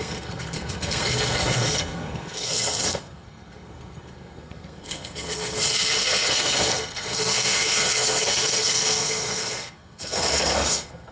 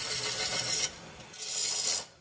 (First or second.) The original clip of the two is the second